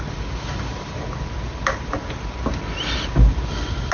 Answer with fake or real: real